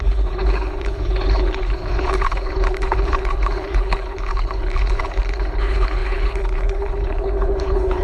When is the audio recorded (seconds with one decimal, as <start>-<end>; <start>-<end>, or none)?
none